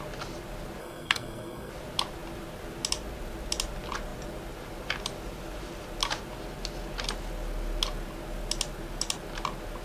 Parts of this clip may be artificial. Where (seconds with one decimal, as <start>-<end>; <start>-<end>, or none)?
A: 0.8-1.7